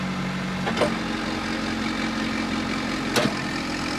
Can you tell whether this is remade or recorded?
recorded